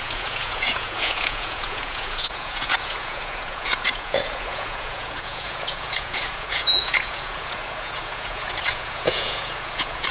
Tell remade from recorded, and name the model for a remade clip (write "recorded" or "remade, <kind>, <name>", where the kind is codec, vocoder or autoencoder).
remade, vocoder, Vocos